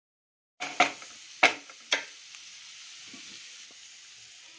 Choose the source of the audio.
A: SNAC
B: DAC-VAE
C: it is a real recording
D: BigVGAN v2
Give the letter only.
C